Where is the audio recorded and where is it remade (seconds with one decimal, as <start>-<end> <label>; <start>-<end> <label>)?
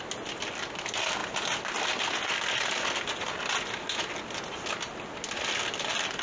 0.0-6.2 recorded